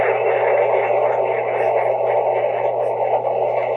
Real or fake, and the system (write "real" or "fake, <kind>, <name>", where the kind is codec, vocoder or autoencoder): real